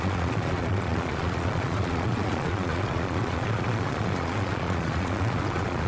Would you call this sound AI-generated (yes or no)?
yes